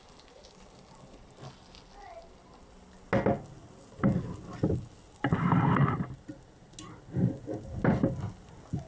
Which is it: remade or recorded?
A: recorded